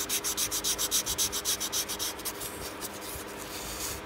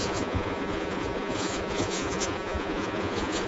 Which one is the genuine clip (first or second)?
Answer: first